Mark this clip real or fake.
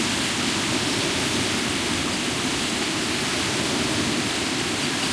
real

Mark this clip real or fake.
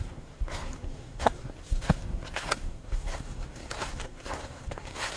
fake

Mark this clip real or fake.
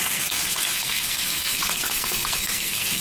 fake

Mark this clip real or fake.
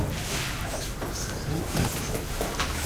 real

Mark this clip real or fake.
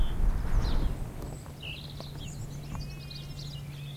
real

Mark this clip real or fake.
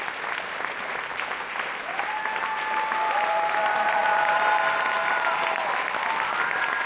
real